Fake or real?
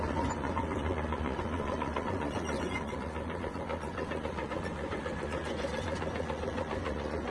fake